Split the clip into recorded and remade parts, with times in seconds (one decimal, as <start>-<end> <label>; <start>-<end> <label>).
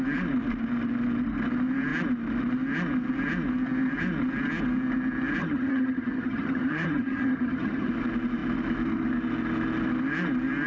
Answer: 0.0-5.4 recorded; 5.4-7.9 remade; 7.9-10.7 recorded